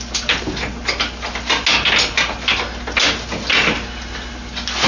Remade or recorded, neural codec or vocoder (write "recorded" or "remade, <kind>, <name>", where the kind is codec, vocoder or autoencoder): recorded